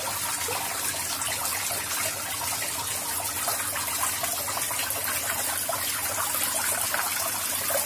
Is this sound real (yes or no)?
yes